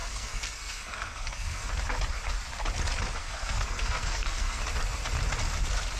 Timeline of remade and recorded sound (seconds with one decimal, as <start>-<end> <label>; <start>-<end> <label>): 0.0-1.7 remade; 1.7-3.2 recorded; 3.2-4.6 remade; 4.6-6.0 recorded